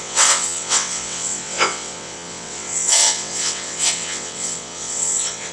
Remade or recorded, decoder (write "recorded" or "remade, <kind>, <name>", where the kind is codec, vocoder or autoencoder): remade, vocoder, WaveNeXt